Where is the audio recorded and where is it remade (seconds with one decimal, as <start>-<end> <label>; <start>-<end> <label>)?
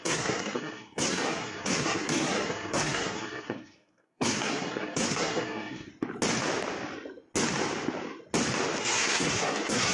0.0-5.9 remade; 5.9-8.8 recorded; 8.8-9.9 remade